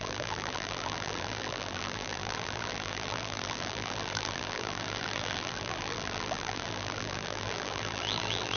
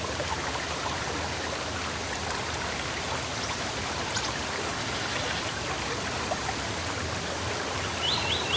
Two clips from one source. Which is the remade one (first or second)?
first